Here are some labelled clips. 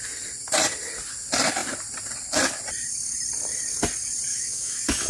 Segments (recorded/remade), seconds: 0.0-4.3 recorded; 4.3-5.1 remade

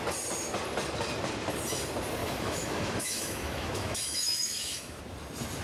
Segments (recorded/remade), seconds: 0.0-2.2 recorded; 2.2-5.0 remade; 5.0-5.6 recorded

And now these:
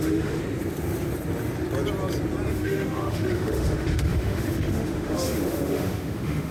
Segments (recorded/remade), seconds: 0.0-0.4 remade; 0.4-2.5 recorded; 2.5-6.5 remade